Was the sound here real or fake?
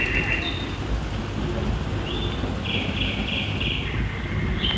real